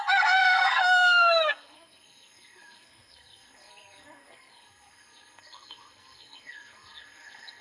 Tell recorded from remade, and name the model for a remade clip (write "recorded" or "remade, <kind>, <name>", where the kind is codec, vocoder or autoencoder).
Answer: remade, codec, SNAC